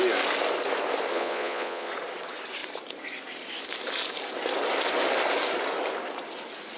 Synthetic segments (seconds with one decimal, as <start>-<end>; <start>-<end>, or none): 1.1-1.9